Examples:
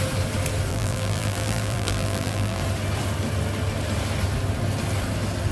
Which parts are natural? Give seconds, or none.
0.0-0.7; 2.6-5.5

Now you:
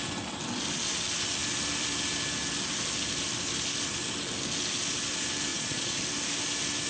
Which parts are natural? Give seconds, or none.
0.0-5.5; 6.0-6.9

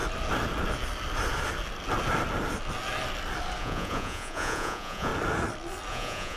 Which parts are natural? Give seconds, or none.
0.0-3.6; 5.1-5.9

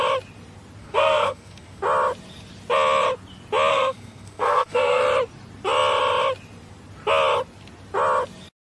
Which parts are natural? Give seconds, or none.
0.0-0.8; 1.8-3.7; 5.0-8.7